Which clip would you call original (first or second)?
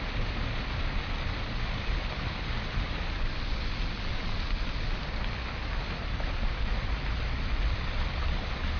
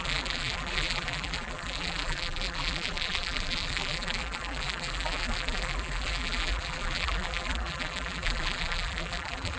first